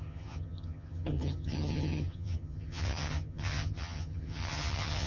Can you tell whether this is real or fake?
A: fake